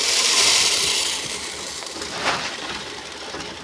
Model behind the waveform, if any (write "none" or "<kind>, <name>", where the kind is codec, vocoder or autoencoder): vocoder, BigVGAN v2